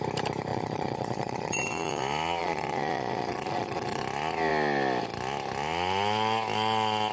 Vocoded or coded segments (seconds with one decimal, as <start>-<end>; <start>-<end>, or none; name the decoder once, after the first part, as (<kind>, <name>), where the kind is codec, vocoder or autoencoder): 0.5-2.0 (vocoder, Vocos); 2.4-4.0